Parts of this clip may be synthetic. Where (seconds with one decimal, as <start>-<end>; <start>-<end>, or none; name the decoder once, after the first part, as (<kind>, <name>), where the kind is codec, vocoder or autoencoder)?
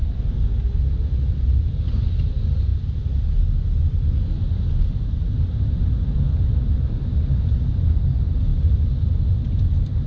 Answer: none